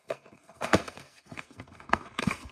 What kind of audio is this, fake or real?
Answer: fake